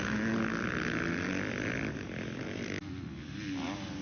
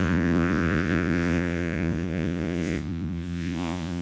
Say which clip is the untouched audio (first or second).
first